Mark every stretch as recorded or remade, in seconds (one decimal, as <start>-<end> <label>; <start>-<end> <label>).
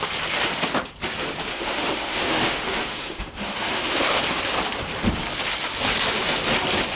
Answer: 0.0-1.5 recorded; 1.5-4.2 remade; 4.2-7.0 recorded